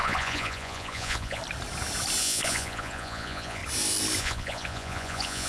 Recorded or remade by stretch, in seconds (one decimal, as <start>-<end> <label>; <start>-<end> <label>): 0.0-1.4 remade; 1.4-2.2 recorded; 2.2-3.6 remade; 3.6-4.2 recorded; 4.2-5.5 remade